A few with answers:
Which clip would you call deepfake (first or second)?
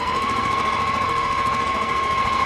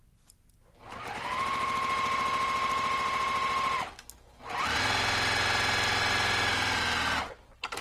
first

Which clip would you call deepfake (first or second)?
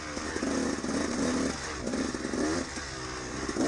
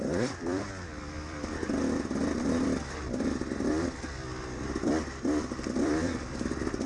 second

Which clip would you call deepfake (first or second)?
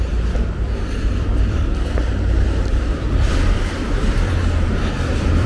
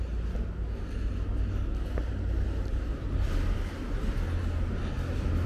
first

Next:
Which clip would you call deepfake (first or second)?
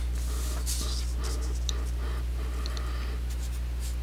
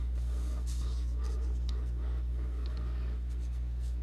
second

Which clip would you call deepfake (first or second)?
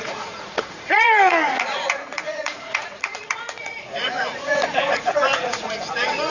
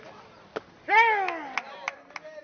first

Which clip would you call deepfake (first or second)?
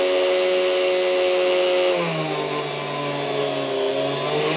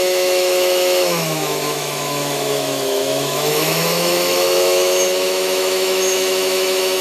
second